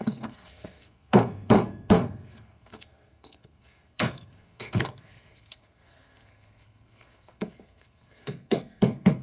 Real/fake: fake